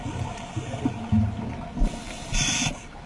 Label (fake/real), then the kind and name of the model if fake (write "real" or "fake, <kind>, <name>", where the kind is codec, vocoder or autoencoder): real